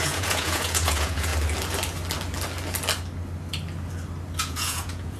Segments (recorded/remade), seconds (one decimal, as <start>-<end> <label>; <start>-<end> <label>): 0.0-1.3 remade; 1.3-4.4 recorded; 4.4-5.2 remade